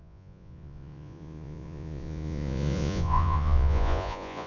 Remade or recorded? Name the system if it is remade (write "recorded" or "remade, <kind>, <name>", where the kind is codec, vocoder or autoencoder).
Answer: remade, vocoder, Vocos